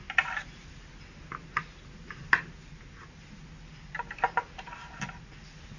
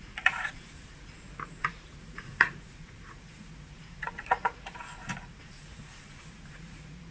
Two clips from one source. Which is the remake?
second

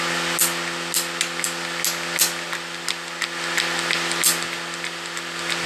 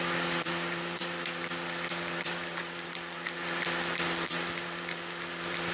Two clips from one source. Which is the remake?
second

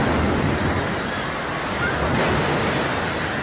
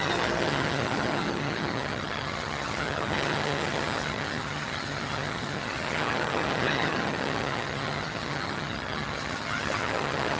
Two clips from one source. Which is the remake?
second